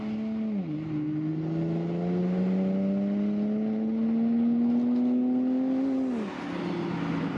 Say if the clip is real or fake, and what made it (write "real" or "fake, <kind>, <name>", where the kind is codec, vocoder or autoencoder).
real